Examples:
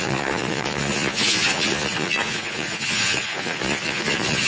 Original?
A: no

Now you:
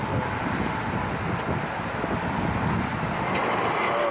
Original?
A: yes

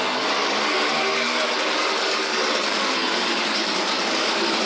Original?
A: no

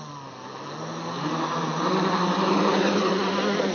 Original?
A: yes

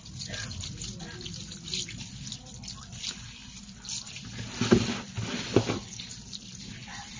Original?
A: yes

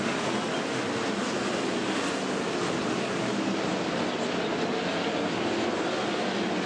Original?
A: yes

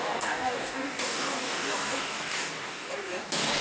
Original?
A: no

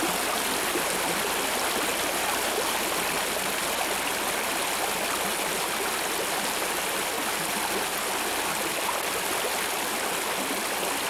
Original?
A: yes